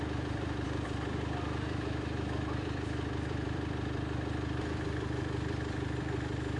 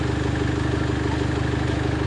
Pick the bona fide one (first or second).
second